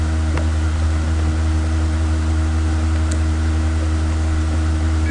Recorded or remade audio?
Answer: recorded